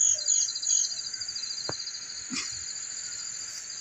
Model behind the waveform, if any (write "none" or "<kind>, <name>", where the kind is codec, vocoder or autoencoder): none